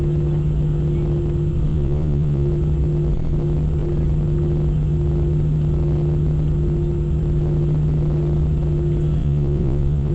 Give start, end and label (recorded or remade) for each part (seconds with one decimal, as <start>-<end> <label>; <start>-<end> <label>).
0.0-1.7 recorded; 1.7-2.5 remade; 2.5-9.2 recorded; 9.2-10.1 remade

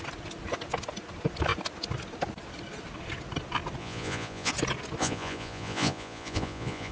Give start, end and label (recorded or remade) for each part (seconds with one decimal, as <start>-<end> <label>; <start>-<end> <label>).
0.0-3.8 recorded; 3.8-4.5 remade; 4.5-5.0 recorded; 5.0-6.9 remade